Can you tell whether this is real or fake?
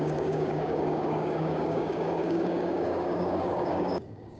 fake